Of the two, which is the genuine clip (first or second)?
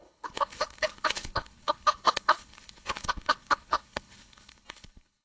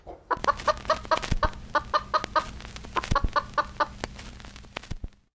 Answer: second